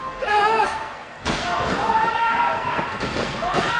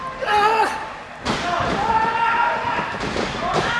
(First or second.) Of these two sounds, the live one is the second